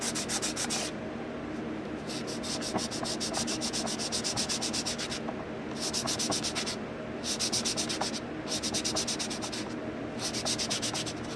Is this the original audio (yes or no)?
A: yes